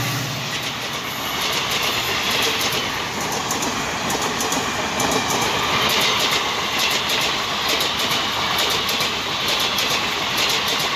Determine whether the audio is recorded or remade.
recorded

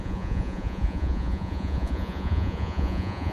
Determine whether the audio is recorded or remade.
remade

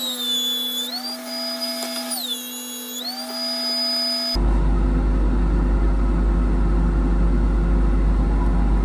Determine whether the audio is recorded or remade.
recorded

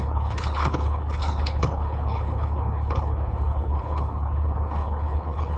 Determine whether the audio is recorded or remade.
remade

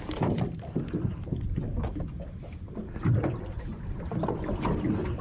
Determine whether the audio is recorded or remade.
recorded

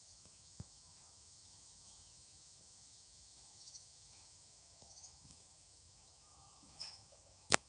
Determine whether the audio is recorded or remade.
remade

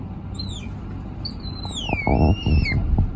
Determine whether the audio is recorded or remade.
recorded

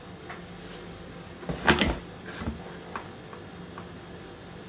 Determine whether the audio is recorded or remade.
recorded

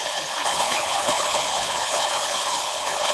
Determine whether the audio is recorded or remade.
remade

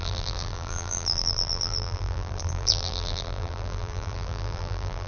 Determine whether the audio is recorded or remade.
remade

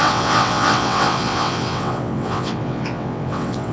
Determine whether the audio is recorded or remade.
remade